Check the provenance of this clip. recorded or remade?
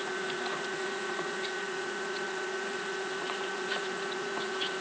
remade